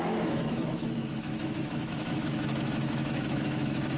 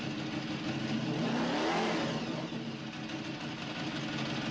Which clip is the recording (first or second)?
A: second